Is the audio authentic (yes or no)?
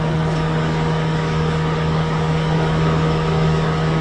no